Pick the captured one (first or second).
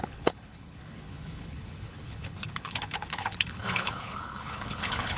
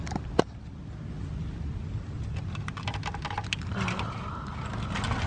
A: second